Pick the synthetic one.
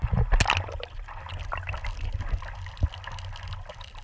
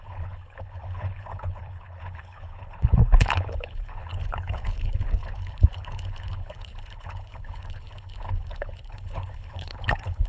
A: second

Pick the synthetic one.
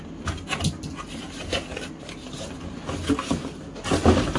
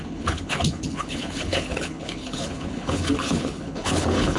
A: second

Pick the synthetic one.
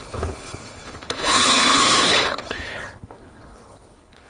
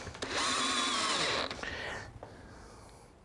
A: first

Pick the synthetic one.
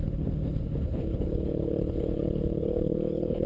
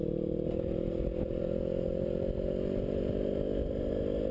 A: first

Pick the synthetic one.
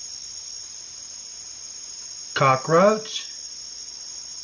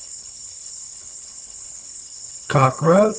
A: second